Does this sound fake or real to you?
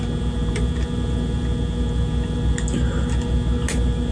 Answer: real